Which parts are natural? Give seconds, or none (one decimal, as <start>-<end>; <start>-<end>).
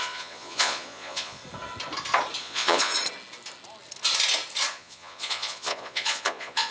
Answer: 1.4-2.4; 2.9-4.7